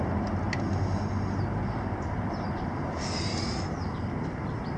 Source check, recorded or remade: recorded